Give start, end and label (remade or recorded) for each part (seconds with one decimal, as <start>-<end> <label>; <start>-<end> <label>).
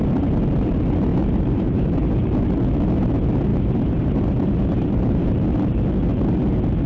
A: 0.0-1.1 recorded; 1.1-2.1 remade; 2.1-3.5 recorded; 3.5-5.3 remade; 5.3-6.9 recorded